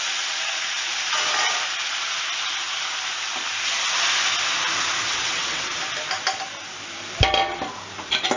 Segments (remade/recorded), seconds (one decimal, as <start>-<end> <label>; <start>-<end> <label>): 0.0-0.9 remade; 0.9-5.1 recorded; 5.1-5.8 remade; 5.8-8.4 recorded